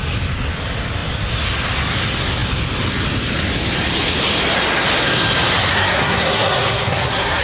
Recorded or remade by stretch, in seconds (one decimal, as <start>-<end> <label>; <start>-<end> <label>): 0.0-5.7 recorded; 5.7-7.4 remade